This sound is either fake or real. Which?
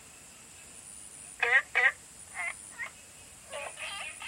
real